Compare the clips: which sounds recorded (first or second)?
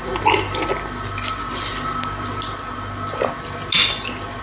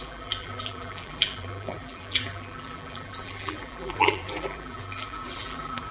first